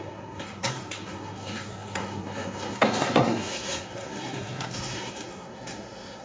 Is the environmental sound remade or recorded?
remade